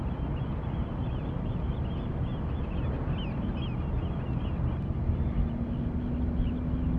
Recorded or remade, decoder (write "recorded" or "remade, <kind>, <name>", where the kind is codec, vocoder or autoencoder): recorded